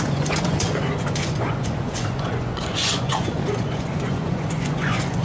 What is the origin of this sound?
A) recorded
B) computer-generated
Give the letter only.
B